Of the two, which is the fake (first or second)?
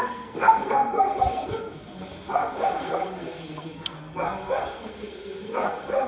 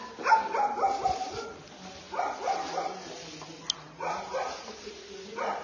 first